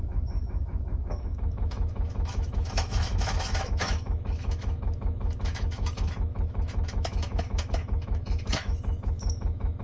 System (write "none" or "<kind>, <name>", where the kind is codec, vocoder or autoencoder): autoencoder, DAC-VAE